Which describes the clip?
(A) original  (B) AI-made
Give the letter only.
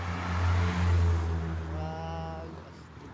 A